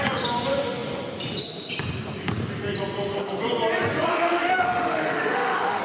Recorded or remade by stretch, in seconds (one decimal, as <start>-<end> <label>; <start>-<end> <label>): 0.0-4.1 recorded; 4.1-5.8 remade